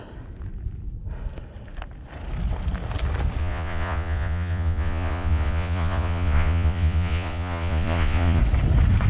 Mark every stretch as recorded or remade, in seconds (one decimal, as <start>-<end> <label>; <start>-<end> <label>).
0.0-3.4 recorded; 3.4-8.4 remade; 8.4-9.1 recorded